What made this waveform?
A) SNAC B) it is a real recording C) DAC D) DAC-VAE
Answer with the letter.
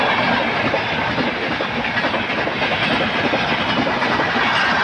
B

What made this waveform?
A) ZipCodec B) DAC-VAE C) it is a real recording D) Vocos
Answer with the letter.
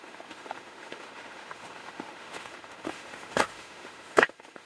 B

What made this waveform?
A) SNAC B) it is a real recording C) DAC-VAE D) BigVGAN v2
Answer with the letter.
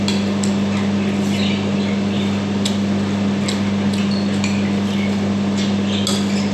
B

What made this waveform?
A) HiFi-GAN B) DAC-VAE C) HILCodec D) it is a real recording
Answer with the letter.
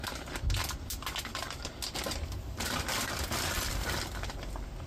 D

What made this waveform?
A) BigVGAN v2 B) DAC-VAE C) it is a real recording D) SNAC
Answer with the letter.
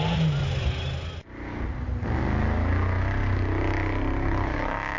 C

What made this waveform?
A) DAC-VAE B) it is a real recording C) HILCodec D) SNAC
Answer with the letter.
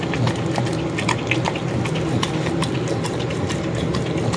B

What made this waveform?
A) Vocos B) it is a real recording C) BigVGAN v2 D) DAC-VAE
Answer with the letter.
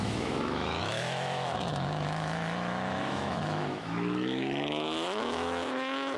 D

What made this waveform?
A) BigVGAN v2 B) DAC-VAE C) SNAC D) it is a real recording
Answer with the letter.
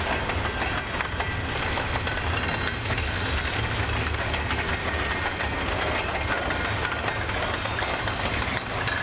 D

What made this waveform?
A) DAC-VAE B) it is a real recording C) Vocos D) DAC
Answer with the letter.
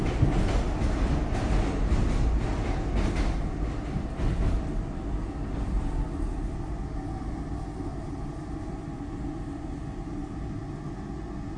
B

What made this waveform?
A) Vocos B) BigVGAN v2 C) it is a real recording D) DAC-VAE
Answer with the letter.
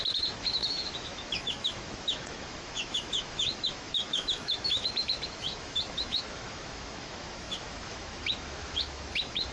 D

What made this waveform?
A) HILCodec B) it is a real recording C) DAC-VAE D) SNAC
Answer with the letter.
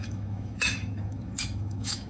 C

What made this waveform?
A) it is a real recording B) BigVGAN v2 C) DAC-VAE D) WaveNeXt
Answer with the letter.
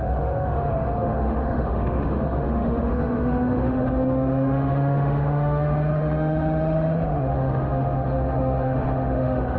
C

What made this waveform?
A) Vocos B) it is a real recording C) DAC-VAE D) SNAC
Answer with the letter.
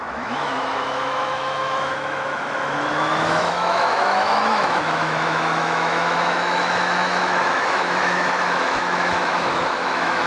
C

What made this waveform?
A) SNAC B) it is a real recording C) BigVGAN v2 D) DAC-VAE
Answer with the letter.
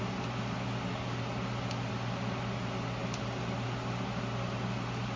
B